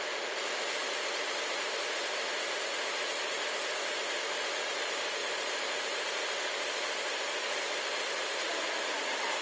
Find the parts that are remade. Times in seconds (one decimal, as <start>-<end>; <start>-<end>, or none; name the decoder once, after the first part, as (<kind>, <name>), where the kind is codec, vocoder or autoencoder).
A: none

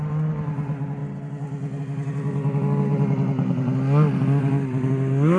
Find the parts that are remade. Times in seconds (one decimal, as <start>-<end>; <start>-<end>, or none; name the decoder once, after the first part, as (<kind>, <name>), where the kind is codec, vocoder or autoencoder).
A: none

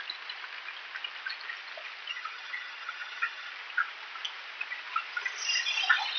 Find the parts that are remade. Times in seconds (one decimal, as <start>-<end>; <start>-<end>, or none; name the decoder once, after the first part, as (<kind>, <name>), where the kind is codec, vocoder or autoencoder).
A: 2.1-3.5 (vocoder, HiFi-GAN)

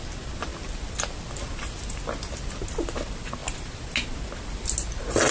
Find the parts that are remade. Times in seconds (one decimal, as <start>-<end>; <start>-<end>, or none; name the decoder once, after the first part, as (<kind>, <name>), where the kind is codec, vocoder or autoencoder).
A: none